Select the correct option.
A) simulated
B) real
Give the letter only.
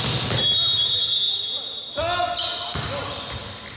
B